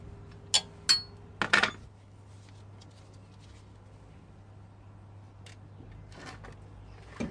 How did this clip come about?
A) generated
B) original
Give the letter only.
B